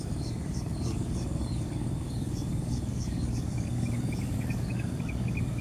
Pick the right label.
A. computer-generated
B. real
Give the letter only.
A